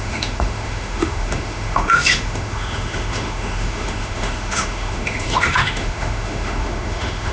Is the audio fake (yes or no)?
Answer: yes